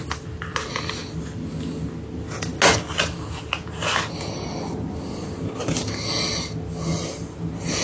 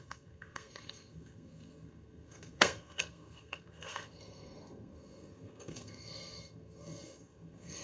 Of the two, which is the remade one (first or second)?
second